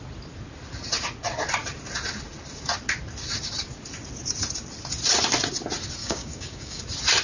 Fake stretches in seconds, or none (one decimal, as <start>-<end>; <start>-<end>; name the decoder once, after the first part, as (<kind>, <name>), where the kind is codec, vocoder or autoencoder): 6.0-6.8 (codec, DAC)